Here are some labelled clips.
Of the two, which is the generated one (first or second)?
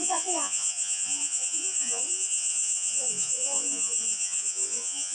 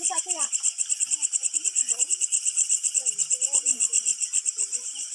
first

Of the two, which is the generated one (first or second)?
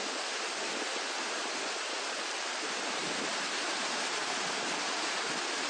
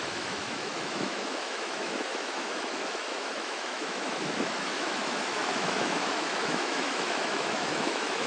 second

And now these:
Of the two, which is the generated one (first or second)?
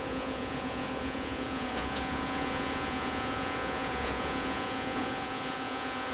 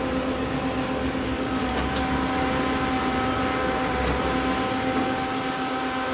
first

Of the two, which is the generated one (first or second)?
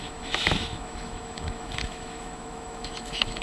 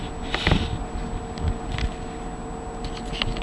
first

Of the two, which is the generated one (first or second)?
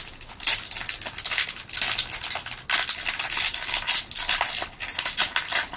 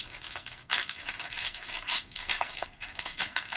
second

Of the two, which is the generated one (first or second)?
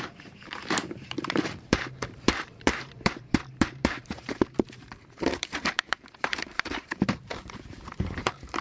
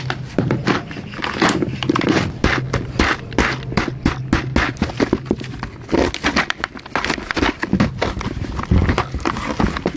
first